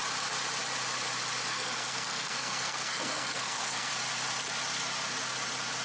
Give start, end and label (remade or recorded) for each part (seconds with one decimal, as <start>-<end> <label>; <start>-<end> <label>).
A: 0.0-1.5 recorded; 1.5-3.9 remade; 3.9-5.8 recorded